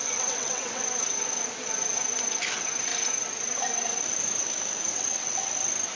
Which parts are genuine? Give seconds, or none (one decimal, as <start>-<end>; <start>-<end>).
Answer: 0.8-4.9; 5.5-6.0